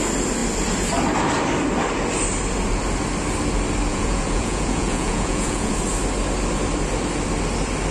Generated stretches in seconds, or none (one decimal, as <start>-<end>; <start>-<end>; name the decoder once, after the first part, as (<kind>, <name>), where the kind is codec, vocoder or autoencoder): 3.9-5.7 (vocoder, Vocos)